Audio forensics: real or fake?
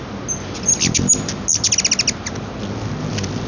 real